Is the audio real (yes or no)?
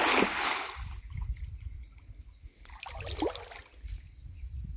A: yes